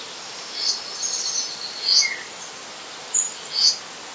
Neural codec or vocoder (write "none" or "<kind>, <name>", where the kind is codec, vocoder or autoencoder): none